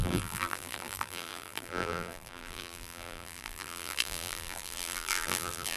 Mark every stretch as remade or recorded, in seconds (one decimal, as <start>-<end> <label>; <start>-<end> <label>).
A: 0.0-5.8 remade